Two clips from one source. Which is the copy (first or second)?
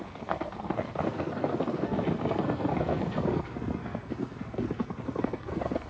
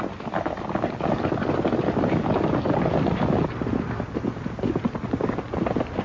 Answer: first